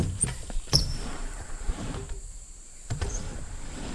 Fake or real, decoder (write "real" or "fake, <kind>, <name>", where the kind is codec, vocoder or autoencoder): fake, vocoder, BigVGAN v2